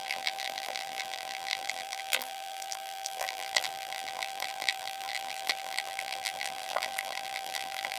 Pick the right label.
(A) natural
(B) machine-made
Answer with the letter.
B